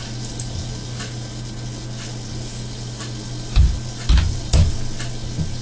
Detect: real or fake real